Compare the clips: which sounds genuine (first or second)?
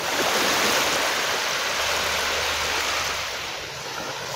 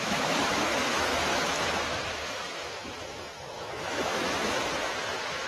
first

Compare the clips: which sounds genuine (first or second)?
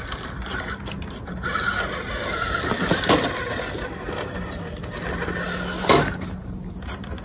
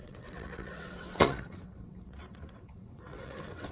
first